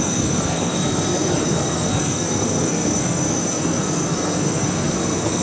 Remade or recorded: remade